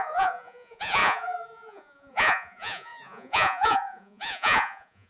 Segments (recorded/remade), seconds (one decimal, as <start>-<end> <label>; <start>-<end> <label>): 0.0-5.1 remade